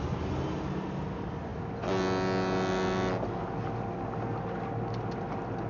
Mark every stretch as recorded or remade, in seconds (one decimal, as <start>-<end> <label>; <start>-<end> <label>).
0.0-5.7 recorded